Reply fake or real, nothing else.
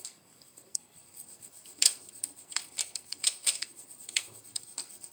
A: fake